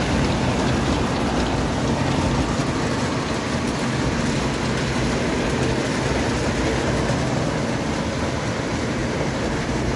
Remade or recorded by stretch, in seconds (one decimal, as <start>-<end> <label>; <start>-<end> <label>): 0.0-9.0 recorded; 9.0-10.0 remade